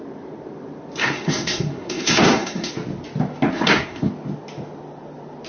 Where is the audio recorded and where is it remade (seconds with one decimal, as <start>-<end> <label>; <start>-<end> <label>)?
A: 0.0-1.0 recorded; 1.0-2.7 remade; 2.7-3.5 recorded; 3.5-4.1 remade; 4.1-5.5 recorded